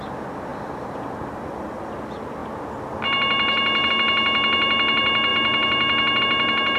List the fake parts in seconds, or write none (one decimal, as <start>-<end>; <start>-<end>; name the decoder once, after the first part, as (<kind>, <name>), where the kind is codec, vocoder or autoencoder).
0.5-1.9 (vocoder, BigVGAN v2)